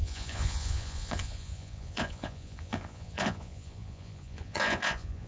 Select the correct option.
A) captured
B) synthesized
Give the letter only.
B